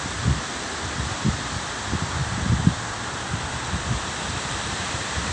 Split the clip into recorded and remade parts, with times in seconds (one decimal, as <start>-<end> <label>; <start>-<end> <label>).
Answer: 0.0-2.2 recorded; 2.2-5.3 remade